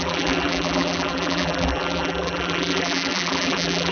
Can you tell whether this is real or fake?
fake